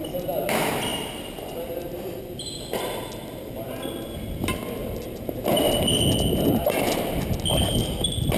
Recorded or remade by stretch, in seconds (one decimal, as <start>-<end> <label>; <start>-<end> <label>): 0.0-0.9 recorded; 0.9-1.5 remade; 1.5-4.8 recorded; 4.8-5.4 remade; 5.4-8.4 recorded